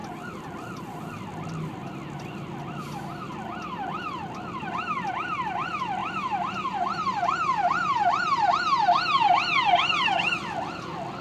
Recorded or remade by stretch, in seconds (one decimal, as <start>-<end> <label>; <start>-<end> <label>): 0.0-6.0 recorded; 6.0-8.5 remade; 8.5-11.2 recorded